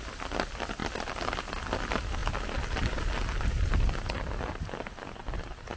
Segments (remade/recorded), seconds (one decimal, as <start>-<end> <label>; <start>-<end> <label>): 0.0-5.8 recorded